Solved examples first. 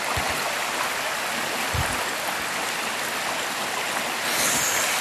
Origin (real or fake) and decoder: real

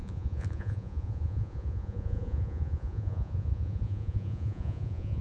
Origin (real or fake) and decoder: fake, vocoder, Vocos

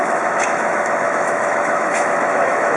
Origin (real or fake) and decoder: fake, autoencoder, DAC-VAE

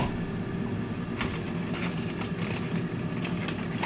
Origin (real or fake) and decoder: real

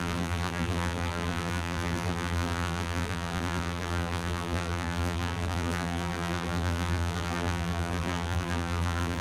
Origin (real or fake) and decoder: fake, vocoder, BigVGAN v2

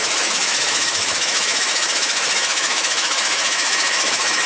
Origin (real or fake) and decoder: fake, autoencoder, DAC-VAE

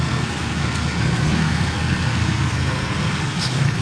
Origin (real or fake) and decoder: fake, codec, SNAC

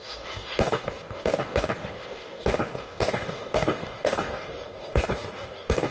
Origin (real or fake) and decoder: fake, codec, DAC